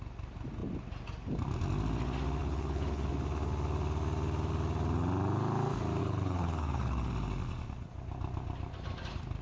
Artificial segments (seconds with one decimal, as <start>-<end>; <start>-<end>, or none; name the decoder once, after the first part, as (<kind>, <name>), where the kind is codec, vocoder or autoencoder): 2.4-3.1 (codec, HILCodec); 6.0-7.1